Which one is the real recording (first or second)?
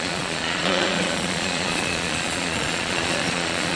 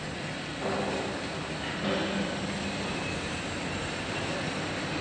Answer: second